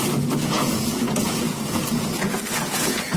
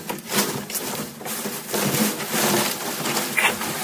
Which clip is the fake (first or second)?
first